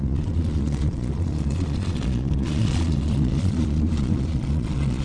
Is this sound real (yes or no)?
no